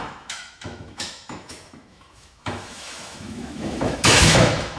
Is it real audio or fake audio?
fake